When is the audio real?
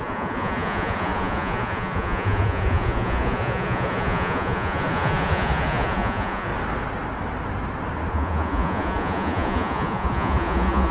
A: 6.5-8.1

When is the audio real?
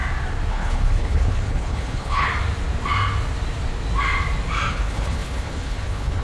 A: 0.0-0.5; 2.3-4.7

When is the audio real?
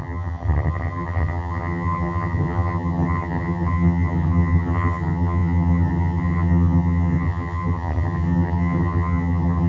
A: none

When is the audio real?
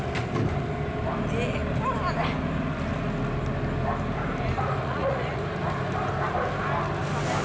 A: 0.0-4.8; 5.4-7.4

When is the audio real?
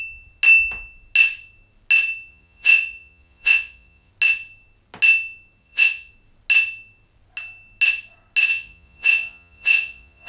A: 0.0-2.3; 4.1-5.6; 6.1-8.5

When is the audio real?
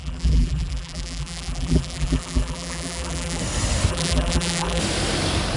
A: 3.4-3.9; 4.8-5.6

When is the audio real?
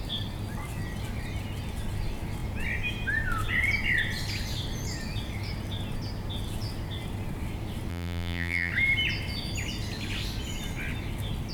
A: 0.0-7.9; 8.7-11.5